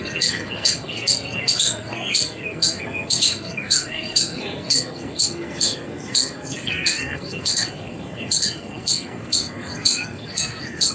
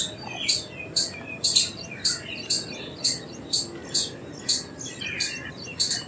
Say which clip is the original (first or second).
second